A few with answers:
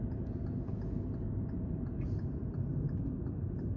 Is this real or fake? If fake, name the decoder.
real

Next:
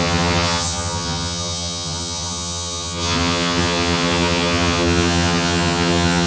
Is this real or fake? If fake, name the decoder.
fake, vocoder, HiFi-GAN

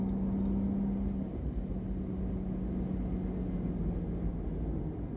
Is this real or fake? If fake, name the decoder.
real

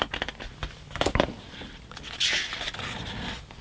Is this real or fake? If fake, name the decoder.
real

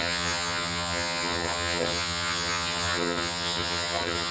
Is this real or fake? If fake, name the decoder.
fake, vocoder, HiFi-GAN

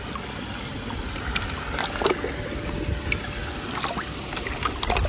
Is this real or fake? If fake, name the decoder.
real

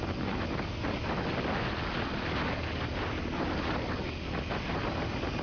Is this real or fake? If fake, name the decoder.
real